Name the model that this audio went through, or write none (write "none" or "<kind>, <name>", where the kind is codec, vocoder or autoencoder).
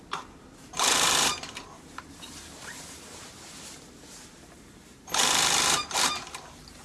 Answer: vocoder, BigVGAN v2